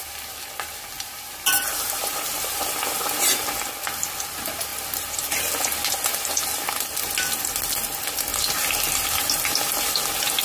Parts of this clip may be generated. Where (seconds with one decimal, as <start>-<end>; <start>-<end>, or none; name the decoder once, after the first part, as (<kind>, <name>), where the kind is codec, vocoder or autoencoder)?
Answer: none